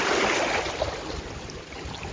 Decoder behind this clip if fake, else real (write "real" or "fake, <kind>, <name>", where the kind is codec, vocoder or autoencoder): real